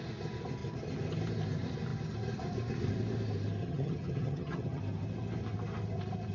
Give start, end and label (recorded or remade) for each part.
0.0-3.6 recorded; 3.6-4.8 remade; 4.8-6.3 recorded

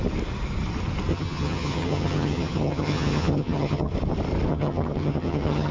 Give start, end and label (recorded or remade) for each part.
0.0-1.1 recorded; 1.1-3.9 remade; 3.9-4.5 recorded; 4.5-5.7 remade